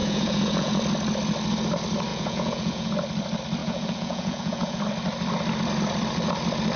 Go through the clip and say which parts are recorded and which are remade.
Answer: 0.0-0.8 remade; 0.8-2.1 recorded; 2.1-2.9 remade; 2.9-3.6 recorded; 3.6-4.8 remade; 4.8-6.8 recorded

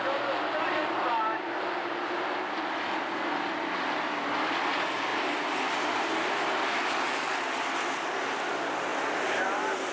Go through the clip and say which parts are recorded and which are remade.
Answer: 0.0-9.9 recorded

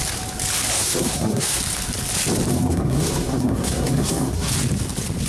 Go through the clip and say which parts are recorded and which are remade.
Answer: 0.0-0.7 recorded; 0.7-1.6 remade; 1.6-2.5 recorded; 2.5-4.5 remade; 4.5-5.3 recorded

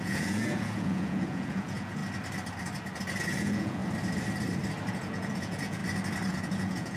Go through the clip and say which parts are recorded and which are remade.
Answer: 0.0-2.0 remade; 2.0-3.4 recorded; 3.4-3.8 remade; 3.8-4.9 recorded; 4.9-5.8 remade; 5.8-6.3 recorded; 6.3-7.0 remade

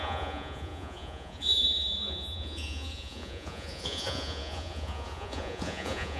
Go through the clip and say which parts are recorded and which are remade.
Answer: 0.0-6.2 remade

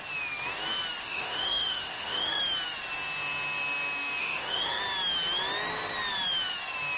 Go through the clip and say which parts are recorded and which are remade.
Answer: 0.0-1.0 recorded; 1.0-2.4 remade; 2.4-4.2 recorded; 4.2-4.8 remade; 4.8-7.0 recorded